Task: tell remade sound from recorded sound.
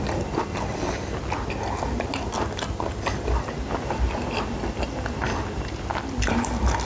recorded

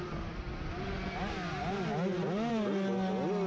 recorded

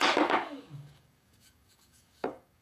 remade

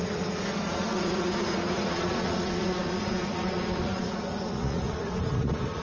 remade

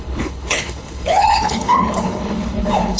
remade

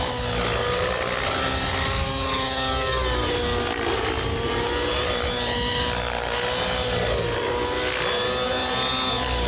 recorded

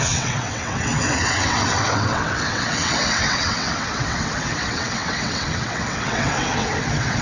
remade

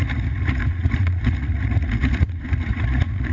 remade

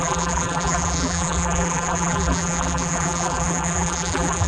remade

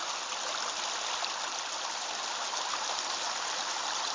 recorded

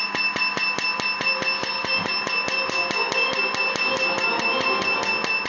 recorded